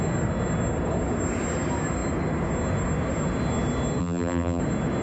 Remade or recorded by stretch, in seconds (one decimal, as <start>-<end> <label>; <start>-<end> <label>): 0.0-4.0 recorded; 4.0-4.6 remade; 4.6-5.0 recorded